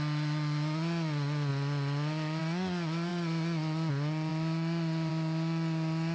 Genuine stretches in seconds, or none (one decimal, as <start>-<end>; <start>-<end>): 0.0-6.1